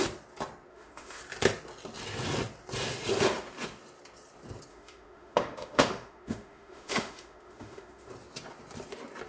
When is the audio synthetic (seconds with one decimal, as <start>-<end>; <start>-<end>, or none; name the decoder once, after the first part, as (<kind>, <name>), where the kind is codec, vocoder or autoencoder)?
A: 0.7-1.2 (autoencoder, DAC-VAE); 4.7-8.1